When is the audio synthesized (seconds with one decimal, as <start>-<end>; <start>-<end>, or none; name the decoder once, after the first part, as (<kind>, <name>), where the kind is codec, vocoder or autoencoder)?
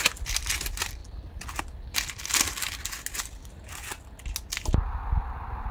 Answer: none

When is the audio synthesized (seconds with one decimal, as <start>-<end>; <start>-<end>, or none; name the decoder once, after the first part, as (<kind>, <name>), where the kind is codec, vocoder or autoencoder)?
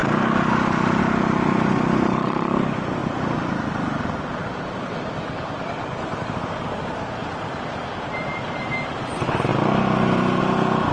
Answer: none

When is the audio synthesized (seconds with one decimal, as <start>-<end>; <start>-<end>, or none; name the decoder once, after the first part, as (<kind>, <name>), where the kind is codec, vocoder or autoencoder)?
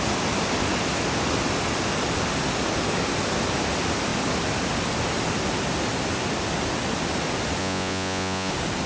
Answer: 7.6-8.5 (vocoder, Vocos)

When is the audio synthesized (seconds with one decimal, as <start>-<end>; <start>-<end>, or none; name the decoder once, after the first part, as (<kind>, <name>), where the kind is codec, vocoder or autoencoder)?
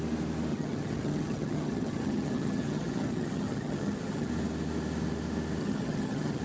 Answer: 0.5-4.3 (vocoder, HiFi-GAN); 5.6-6.4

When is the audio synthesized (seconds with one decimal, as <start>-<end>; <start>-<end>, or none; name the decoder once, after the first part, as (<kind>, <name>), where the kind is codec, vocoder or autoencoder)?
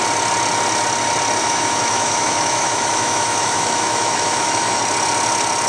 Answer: 1.4-4.8 (autoencoder, DAC-VAE)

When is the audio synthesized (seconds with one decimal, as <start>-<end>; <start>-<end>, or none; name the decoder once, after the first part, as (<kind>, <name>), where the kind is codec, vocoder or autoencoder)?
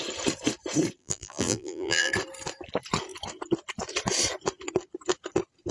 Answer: 1.0-2.1 (vocoder, BigVGAN v2)